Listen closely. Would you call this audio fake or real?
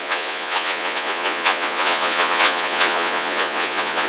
fake